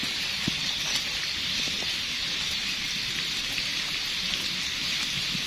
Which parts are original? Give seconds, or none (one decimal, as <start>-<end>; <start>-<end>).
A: 0.0-5.5